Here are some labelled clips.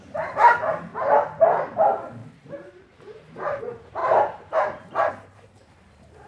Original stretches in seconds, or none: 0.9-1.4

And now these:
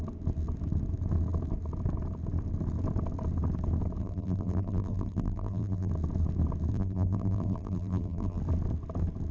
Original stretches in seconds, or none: 0.0-4.0; 5.9-6.7; 8.4-9.3